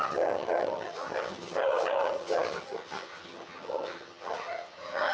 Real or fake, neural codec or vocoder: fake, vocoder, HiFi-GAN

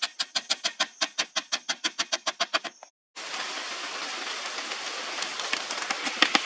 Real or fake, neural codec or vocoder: real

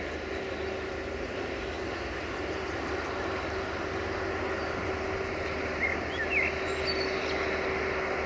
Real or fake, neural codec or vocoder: real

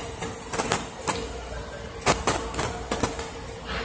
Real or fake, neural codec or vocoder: real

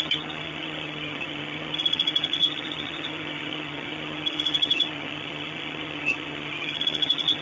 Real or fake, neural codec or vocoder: fake, vocoder, HiFi-GAN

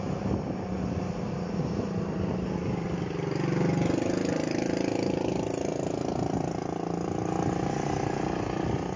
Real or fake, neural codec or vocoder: real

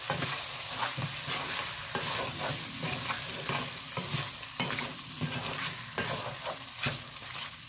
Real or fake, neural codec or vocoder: real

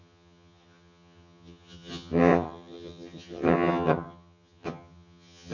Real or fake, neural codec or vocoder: fake, vocoder, HiFi-GAN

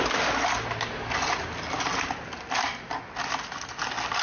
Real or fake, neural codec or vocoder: real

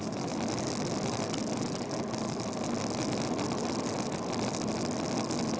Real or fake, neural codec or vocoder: real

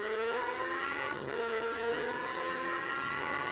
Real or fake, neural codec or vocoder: fake, vocoder, HiFi-GAN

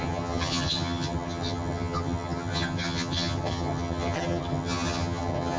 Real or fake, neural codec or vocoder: fake, vocoder, HiFi-GAN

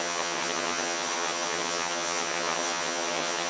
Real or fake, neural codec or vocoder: fake, vocoder, HiFi-GAN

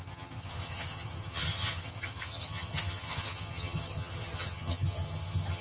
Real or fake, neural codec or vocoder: fake, vocoder, HiFi-GAN